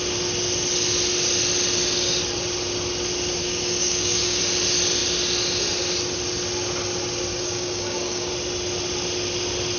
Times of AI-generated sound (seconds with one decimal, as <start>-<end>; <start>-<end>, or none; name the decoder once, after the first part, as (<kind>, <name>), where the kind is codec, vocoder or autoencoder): 3.4-4.4 (codec, DAC); 7.3-8.3